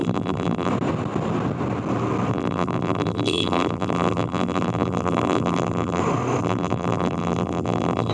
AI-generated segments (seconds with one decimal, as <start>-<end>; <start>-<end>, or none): 0.0-0.7; 2.3-6.0; 6.4-8.1